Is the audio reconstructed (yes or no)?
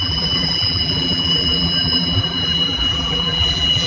yes